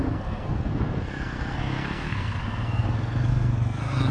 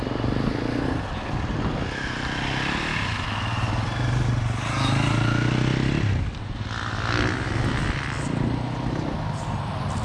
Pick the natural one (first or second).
second